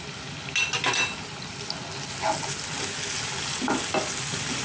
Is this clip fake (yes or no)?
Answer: no